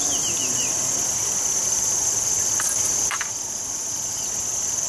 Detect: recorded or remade recorded